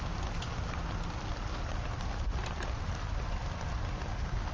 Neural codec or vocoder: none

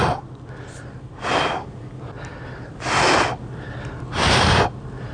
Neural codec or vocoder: none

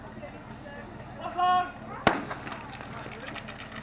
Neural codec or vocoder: none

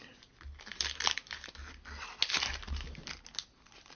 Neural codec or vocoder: none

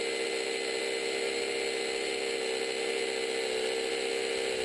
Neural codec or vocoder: none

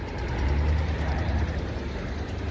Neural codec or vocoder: none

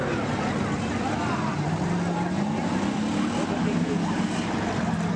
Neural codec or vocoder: none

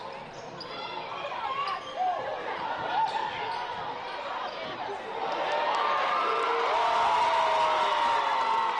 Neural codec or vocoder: none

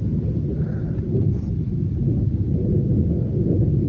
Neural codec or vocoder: none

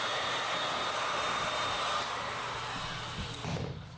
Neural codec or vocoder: none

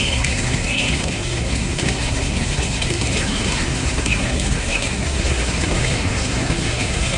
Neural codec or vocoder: codec, SNAC